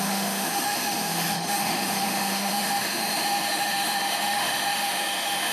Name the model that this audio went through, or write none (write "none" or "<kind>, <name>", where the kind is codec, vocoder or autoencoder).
autoencoder, DAC-VAE